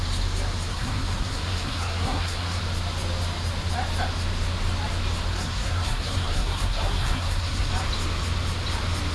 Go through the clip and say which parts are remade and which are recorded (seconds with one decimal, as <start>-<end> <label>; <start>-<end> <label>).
0.0-0.7 recorded; 0.7-2.6 remade; 2.6-5.3 recorded; 5.3-7.7 remade; 7.7-9.1 recorded